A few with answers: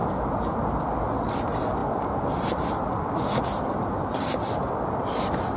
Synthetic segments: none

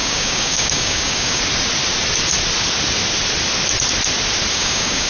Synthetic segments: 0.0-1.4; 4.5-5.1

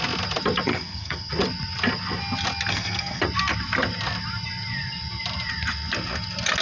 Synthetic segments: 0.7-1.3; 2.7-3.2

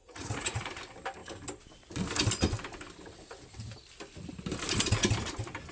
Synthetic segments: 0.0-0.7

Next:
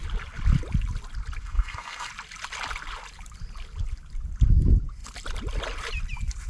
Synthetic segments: 1.4-2.1

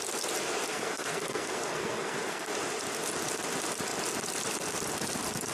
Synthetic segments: 0.7-2.5

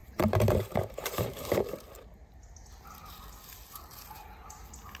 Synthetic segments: 0.0-1.3